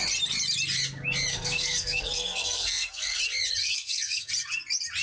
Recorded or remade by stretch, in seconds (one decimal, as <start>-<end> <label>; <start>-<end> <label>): 0.0-1.3 recorded; 1.3-3.2 remade; 3.2-3.6 recorded; 3.6-4.3 remade; 4.3-5.0 recorded